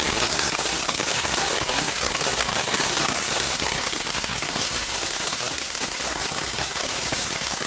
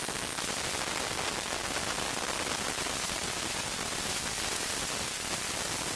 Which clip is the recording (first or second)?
second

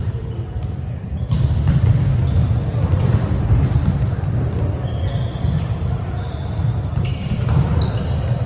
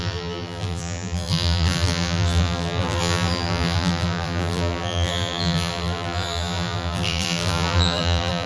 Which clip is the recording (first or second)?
first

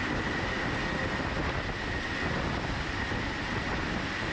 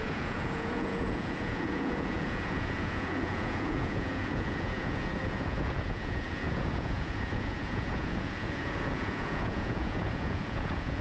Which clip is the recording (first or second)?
first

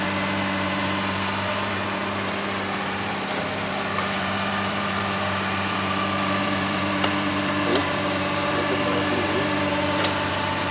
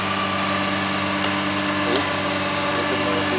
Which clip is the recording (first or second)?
second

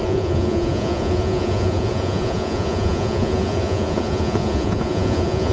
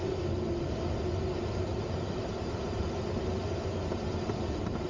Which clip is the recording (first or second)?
second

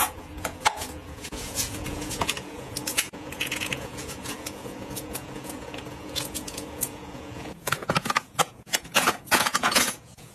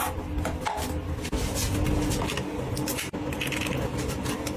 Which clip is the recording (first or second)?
second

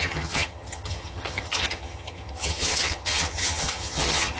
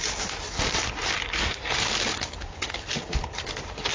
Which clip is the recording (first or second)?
second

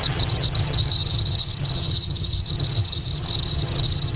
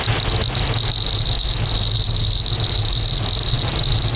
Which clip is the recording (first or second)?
second